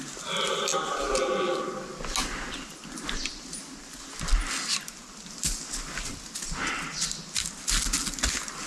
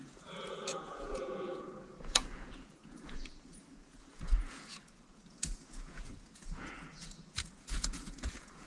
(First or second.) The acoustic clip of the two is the first